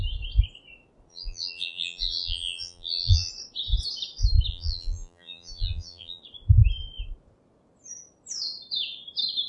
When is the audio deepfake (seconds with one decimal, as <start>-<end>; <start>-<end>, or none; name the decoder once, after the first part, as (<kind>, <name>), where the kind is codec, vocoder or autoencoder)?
1.1-3.3 (vocoder, BigVGAN v2); 4.5-6.2

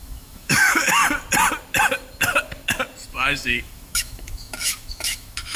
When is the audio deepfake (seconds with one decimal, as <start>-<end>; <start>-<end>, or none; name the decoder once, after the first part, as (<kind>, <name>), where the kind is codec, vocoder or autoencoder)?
0.0-1.0 (autoencoder, DAC-VAE); 3.1-5.6

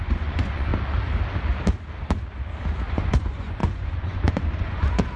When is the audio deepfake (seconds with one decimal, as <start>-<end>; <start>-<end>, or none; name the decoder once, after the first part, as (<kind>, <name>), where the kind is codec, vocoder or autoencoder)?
0.0-0.7 (vocoder, Vocos); 2.9-5.2